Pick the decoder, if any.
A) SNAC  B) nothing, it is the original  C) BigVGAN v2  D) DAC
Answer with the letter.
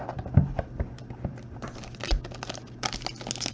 B